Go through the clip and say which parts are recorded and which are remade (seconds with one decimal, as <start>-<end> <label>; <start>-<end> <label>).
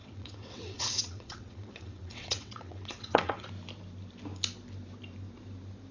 0.0-3.5 remade; 3.5-5.9 recorded